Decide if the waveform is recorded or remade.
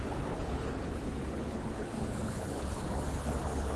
remade